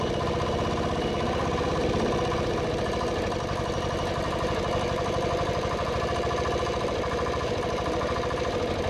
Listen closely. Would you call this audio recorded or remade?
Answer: recorded